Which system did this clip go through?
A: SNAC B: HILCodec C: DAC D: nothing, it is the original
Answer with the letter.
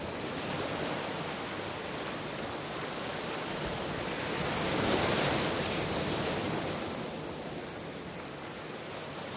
D